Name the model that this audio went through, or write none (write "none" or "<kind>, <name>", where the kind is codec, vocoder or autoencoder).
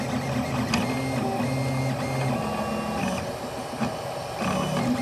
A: none